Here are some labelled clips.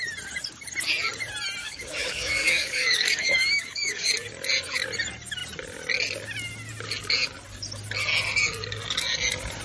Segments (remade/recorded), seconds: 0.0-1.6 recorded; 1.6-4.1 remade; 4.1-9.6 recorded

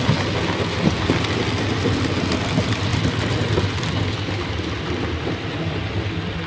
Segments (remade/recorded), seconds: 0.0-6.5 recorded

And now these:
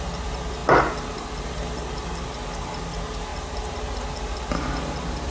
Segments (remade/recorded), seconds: 0.0-5.3 recorded

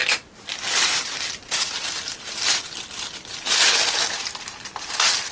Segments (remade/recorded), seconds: 0.0-5.3 recorded

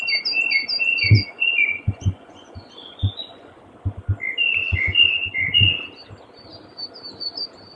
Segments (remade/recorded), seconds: 0.0-0.9 recorded; 0.9-3.6 remade; 3.6-4.6 recorded; 4.6-5.7 remade; 5.7-7.8 recorded

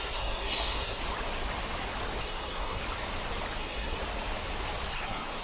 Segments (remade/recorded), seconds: 0.0-1.0 remade; 1.0-2.2 recorded; 2.2-2.8 remade; 2.8-3.6 recorded; 3.6-4.0 remade; 4.0-4.9 recorded; 4.9-5.4 remade